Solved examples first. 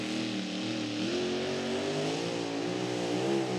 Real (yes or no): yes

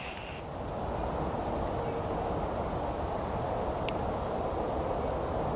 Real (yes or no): yes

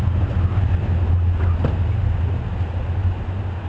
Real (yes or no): yes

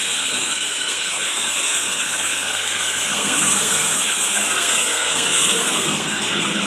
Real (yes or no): no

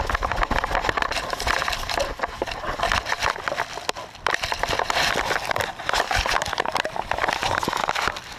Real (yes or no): yes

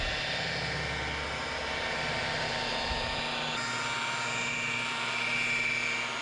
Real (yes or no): yes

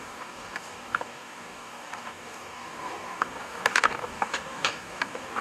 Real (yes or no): no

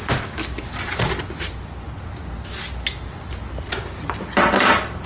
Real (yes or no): yes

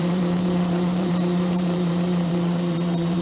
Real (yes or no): no